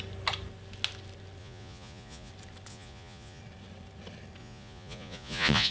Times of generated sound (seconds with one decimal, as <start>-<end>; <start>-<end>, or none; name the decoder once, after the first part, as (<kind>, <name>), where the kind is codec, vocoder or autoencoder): 1.4-2.3 (vocoder, Vocos); 2.7-3.4; 4.4-5.7